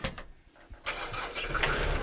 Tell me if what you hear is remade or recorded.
recorded